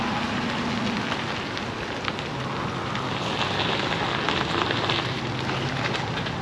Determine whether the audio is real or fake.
real